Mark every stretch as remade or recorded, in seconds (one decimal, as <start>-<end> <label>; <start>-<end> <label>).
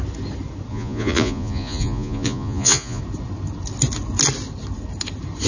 0.0-0.7 recorded; 0.7-3.0 remade; 3.0-5.5 recorded